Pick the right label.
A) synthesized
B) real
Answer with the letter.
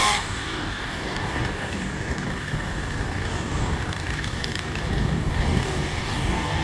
A